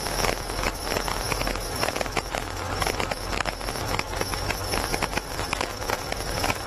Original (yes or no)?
no